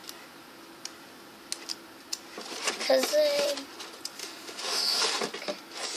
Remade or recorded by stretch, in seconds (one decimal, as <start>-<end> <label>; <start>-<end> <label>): 0.0-4.2 recorded; 4.2-5.0 remade; 5.0-6.0 recorded